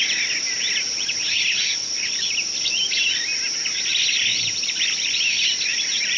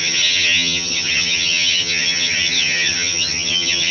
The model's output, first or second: second